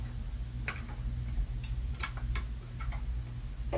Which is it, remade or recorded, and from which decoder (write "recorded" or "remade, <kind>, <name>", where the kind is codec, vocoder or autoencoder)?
recorded